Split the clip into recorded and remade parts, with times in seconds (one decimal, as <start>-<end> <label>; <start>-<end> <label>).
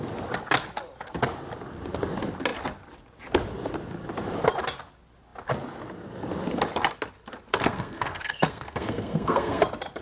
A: 0.0-7.5 recorded; 7.5-9.6 remade; 9.6-10.0 recorded